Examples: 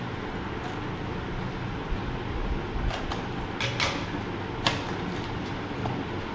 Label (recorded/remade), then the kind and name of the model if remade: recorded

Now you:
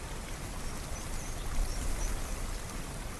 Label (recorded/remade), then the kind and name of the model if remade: recorded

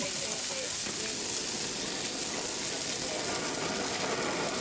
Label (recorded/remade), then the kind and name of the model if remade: recorded